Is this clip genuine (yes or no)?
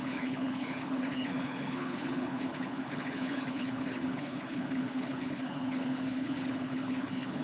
no